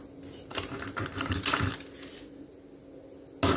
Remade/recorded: recorded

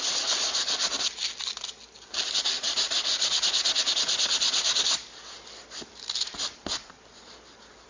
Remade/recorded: recorded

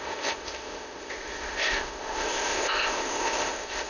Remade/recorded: remade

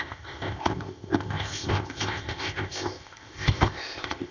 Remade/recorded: remade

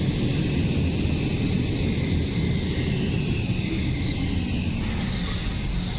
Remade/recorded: recorded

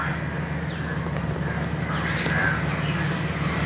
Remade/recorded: recorded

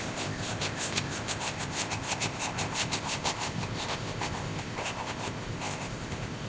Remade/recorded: remade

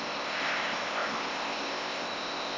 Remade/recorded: remade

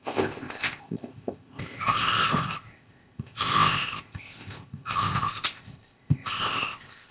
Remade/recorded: remade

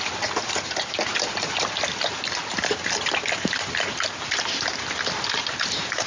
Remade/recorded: recorded